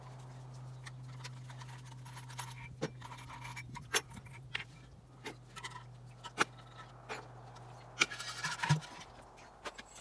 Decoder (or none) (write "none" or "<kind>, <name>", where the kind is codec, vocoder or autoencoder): none